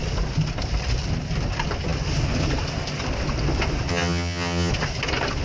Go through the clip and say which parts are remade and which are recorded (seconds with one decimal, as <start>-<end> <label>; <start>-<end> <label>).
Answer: 0.0-3.9 recorded; 3.9-4.7 remade; 4.7-5.4 recorded